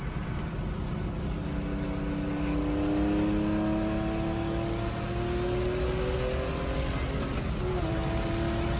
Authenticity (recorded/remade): recorded